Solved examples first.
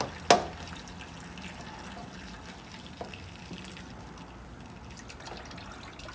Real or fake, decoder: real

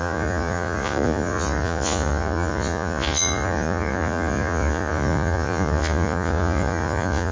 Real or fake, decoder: fake, vocoder, Vocos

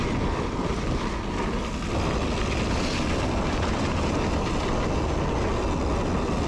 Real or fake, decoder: real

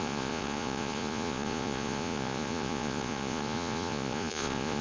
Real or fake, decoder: fake, vocoder, Vocos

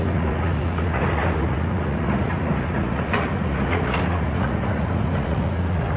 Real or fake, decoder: fake, vocoder, Vocos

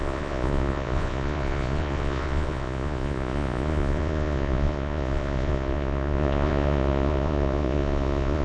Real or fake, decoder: fake, vocoder, Vocos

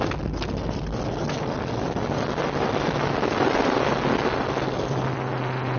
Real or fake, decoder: real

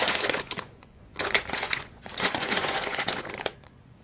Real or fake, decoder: fake, vocoder, Vocos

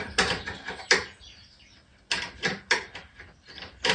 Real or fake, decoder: real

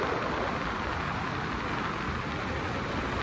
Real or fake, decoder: real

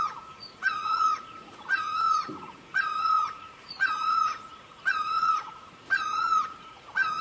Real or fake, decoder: fake, vocoder, Vocos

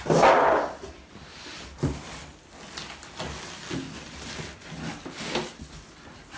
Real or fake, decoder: real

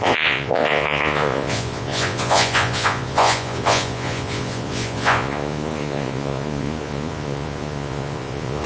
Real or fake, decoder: fake, vocoder, Vocos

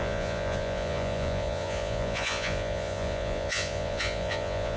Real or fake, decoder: fake, vocoder, Vocos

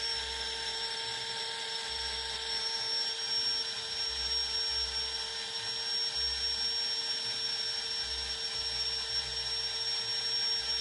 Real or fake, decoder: real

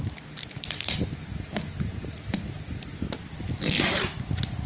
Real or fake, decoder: real